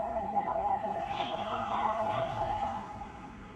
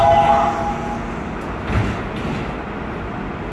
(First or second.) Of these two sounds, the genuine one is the second